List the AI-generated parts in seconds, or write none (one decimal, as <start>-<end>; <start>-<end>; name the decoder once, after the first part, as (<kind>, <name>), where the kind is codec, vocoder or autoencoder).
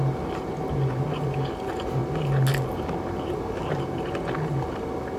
none